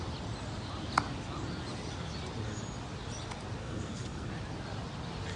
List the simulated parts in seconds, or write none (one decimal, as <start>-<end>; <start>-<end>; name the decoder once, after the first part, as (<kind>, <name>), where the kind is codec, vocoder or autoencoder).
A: 3.6-4.3 (codec, SNAC)